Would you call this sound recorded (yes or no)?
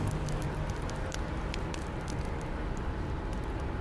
yes